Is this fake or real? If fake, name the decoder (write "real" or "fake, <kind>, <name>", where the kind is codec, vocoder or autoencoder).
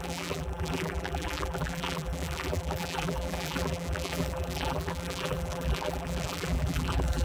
fake, vocoder, BigVGAN v2